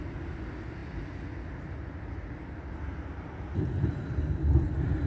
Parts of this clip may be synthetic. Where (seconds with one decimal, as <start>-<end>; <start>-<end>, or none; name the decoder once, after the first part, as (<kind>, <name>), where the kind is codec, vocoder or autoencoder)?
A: none